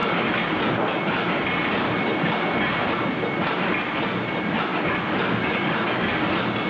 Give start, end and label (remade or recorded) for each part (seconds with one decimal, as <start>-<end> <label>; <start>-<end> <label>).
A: 0.0-6.7 recorded